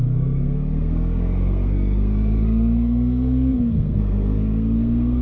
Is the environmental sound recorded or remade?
remade